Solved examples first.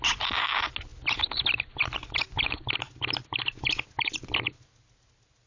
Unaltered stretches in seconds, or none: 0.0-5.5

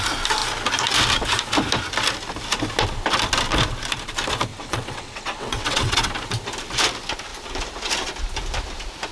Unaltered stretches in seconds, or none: 0.0-4.5; 6.1-9.1